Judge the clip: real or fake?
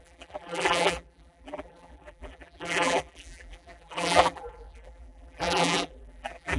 fake